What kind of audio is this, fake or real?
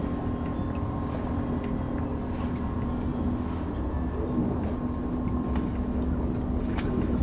real